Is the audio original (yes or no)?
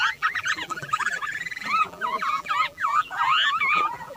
no